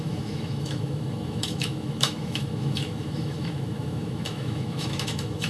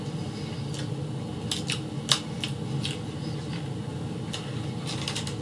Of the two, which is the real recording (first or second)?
second